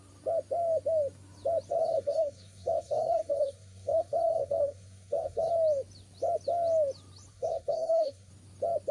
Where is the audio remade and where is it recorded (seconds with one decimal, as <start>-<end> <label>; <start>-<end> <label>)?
0.0-1.7 recorded; 1.7-5.5 remade; 5.5-7.3 recorded; 7.3-8.3 remade; 8.3-8.9 recorded